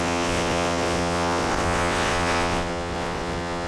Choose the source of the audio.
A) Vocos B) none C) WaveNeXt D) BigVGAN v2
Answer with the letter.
C